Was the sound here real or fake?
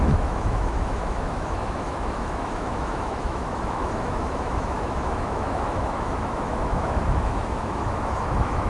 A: fake